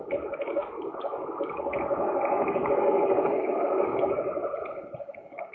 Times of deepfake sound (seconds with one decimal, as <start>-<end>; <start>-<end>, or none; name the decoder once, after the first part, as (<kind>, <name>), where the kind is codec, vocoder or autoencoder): 0.0-4.4 (codec, DAC); 5.0-5.5